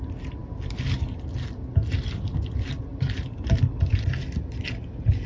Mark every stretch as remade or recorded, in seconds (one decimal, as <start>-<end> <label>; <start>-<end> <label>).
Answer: 0.0-5.3 recorded